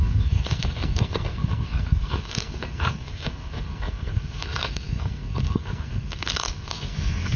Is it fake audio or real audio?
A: fake